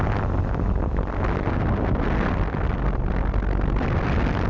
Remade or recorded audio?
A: recorded